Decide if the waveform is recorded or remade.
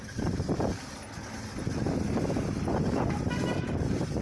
recorded